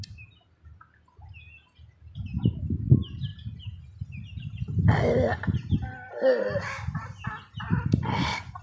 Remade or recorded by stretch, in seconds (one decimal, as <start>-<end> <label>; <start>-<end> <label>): 0.0-8.6 recorded